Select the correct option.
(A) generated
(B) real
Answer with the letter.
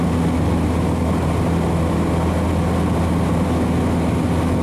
B